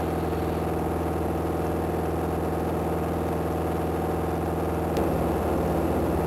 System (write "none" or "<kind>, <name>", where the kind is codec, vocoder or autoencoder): none